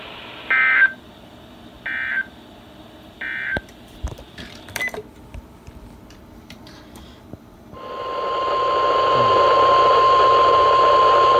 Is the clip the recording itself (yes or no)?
no